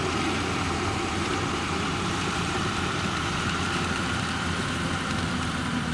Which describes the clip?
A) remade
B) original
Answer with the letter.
A